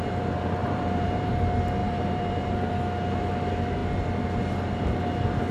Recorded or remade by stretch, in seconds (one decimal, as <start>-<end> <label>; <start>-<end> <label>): 0.0-0.6 recorded; 0.6-1.3 remade; 1.3-1.8 recorded; 1.8-2.7 remade; 2.7-5.5 recorded